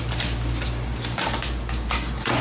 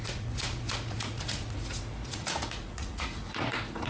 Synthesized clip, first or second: second